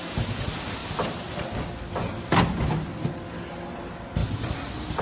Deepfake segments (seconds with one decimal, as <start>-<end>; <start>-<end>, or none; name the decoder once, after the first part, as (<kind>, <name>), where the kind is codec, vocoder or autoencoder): none